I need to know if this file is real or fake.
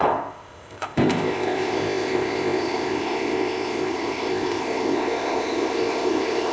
fake